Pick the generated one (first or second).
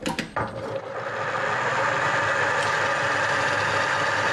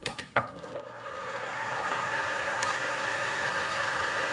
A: second